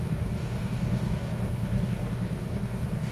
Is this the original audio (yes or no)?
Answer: no